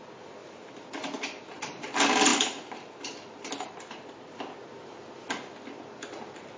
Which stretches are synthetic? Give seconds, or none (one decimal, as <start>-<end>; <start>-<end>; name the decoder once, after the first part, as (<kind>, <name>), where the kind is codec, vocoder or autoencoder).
0.4-1.9 (vocoder, BigVGAN v2); 2.3-4.2